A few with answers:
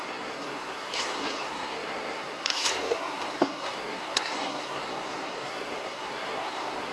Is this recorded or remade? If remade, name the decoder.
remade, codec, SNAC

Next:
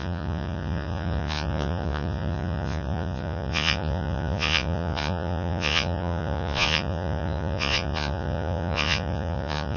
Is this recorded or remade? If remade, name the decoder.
remade, vocoder, Vocos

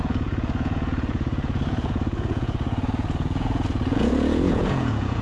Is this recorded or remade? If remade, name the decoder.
remade, vocoder, Vocos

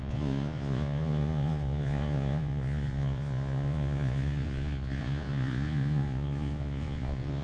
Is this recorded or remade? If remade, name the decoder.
remade, vocoder, Vocos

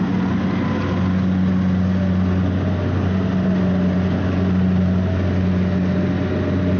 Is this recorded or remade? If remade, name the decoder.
recorded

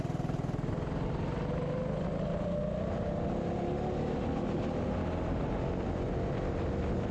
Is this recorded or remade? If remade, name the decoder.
recorded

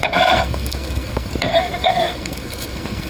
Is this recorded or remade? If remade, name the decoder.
remade, codec, SNAC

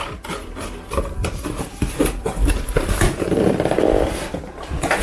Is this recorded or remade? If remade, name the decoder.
remade, vocoder, BigVGAN v2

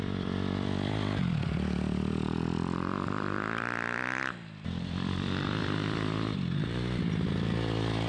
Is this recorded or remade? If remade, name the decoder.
remade, vocoder, BigVGAN v2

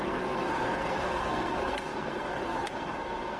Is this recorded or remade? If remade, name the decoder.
remade, codec, SNAC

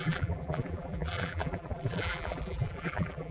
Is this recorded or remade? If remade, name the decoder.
remade, vocoder, BigVGAN v2